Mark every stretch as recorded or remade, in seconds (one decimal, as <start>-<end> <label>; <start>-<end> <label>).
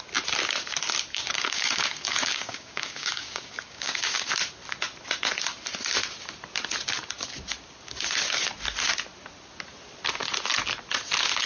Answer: 0.0-1.1 recorded; 1.1-4.3 remade; 4.3-11.5 recorded